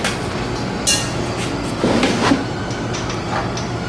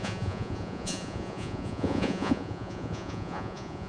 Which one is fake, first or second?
second